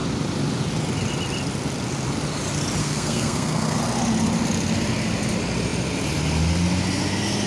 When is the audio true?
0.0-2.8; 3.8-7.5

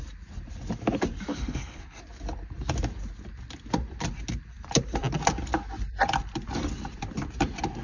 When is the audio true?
0.0-1.3; 1.8-7.8